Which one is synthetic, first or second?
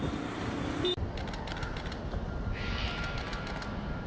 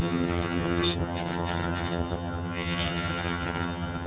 second